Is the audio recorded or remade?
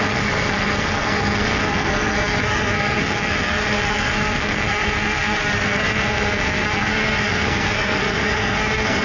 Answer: remade